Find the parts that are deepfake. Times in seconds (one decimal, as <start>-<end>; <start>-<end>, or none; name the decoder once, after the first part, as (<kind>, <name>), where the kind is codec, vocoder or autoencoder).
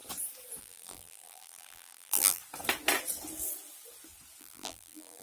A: 0.6-2.4 (vocoder, BigVGAN v2); 4.4-5.2